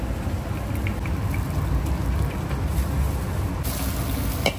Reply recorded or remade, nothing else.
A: recorded